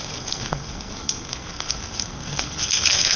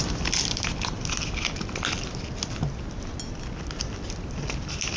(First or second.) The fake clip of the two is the first